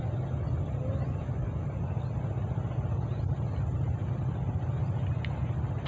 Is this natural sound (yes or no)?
yes